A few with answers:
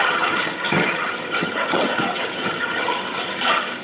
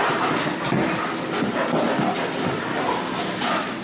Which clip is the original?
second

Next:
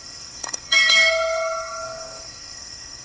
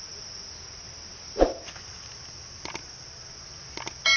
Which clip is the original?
second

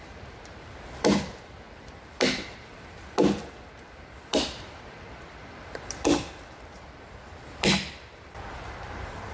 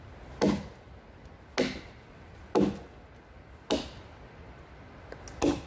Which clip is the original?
second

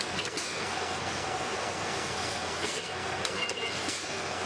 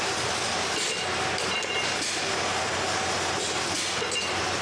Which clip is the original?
second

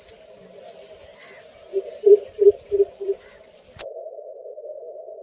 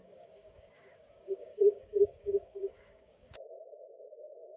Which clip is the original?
first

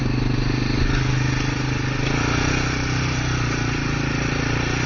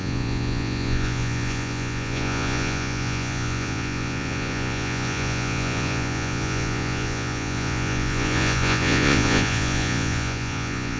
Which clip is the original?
first